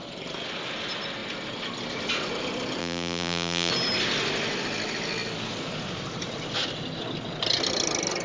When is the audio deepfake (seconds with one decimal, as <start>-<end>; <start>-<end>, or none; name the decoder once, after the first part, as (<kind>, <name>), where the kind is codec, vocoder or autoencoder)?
2.8-3.7 (vocoder, BigVGAN v2)